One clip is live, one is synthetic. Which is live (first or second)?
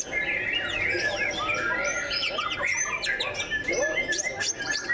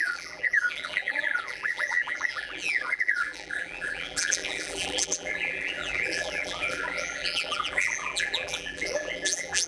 first